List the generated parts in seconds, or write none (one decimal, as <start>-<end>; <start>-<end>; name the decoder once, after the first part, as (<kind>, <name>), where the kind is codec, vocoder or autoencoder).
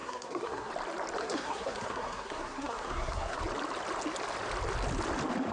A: 0.0-0.7 (codec, SNAC); 1.2-3.4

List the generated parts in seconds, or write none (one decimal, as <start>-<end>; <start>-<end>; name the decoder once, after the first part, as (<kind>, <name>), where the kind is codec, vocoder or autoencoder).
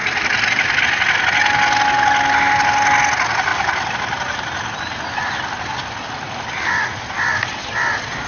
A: none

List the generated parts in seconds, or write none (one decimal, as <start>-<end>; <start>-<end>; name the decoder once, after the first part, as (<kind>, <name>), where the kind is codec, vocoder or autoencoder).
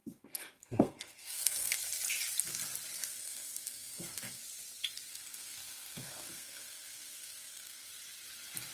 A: 0.0-1.8 (codec, SNAC); 3.0-4.4; 5.1-7.9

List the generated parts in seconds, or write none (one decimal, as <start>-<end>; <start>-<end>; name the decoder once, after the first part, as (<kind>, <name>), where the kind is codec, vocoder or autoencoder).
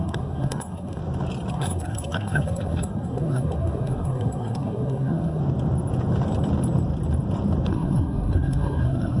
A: 0.0-1.0 (codec, SNAC); 1.5-5.4; 7.7-9.2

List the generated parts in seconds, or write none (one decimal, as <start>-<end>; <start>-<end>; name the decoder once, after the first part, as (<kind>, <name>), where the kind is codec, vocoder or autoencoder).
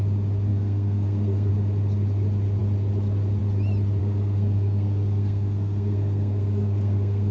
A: 0.5-1.5 (codec, SNAC); 4.0-7.3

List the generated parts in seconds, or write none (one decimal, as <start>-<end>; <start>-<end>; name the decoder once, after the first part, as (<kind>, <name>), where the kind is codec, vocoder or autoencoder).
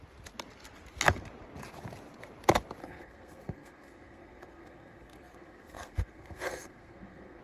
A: 2.8-7.4 (codec, SNAC)